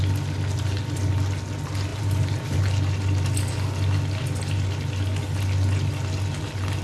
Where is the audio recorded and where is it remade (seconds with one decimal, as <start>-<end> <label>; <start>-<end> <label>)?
0.0-1.9 recorded; 1.9-2.6 remade; 2.6-6.8 recorded